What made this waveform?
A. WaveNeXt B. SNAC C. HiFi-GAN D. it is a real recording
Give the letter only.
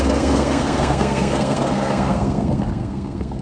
B